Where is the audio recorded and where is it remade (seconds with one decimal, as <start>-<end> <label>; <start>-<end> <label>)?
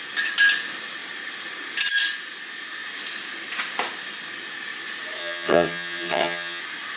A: 0.0-5.2 recorded; 5.2-6.6 remade; 6.6-7.0 recorded